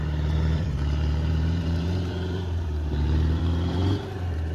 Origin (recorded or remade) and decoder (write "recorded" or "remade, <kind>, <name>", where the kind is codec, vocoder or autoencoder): remade, vocoder, BigVGAN v2